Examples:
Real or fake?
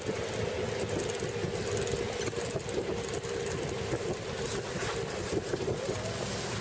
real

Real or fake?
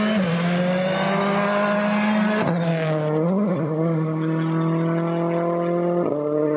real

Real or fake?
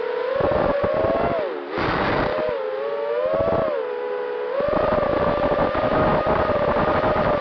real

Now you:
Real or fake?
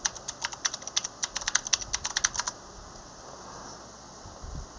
real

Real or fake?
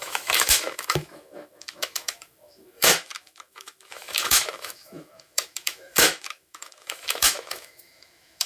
fake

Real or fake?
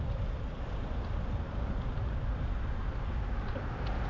real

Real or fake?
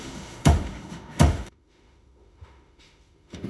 fake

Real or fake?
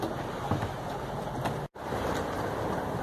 real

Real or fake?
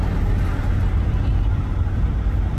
real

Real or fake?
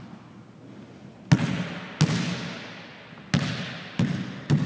real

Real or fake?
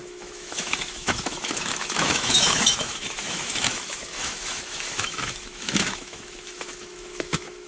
fake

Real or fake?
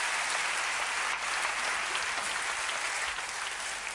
real